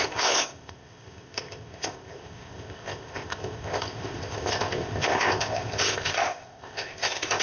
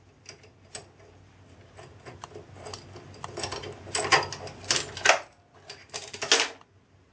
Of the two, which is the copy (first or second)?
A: first